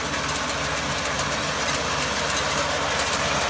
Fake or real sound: real